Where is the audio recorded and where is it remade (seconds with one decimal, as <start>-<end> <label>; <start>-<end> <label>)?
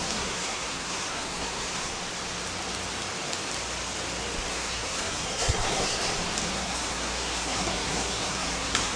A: 0.0-1.9 remade; 1.9-4.5 recorded; 4.5-6.0 remade; 6.0-6.5 recorded; 6.5-9.0 remade